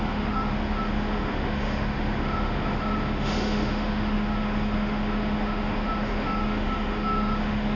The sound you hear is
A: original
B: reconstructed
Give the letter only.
B